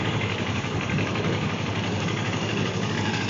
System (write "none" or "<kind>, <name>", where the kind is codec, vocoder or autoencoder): codec, DAC